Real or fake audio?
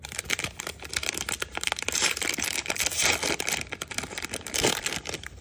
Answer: fake